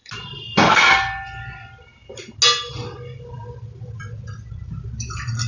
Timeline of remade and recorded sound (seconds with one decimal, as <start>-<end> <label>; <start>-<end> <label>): 0.0-2.7 recorded; 2.7-5.5 remade